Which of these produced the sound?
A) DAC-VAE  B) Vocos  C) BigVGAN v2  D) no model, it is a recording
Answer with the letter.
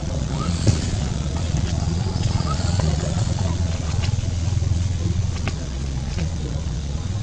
B